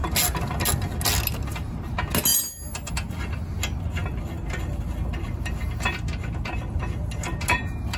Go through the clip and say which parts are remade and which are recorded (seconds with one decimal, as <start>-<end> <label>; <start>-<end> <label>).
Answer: 0.0-8.0 recorded